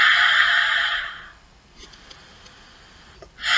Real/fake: real